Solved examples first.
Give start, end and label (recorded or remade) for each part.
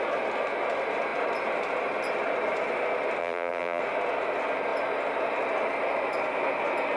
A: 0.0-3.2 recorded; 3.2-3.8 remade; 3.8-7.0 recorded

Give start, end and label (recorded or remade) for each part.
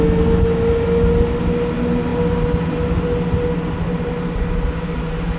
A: 0.0-5.4 recorded